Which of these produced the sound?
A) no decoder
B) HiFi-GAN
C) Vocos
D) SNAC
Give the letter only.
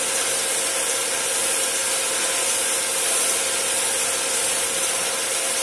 A